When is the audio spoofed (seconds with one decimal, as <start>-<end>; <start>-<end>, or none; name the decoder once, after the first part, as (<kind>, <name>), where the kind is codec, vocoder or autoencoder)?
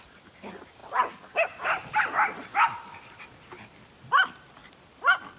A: none